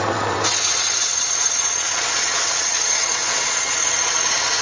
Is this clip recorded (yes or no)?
no